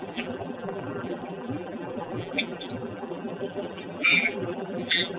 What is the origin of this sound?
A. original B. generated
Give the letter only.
B